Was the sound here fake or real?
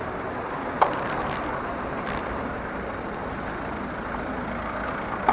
real